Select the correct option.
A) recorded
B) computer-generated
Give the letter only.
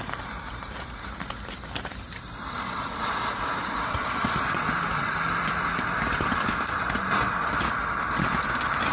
B